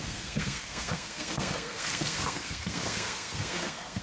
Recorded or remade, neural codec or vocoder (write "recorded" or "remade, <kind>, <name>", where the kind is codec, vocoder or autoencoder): remade, codec, SNAC